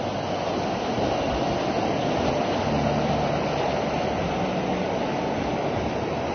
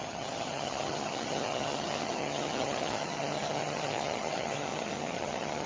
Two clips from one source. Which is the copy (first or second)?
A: second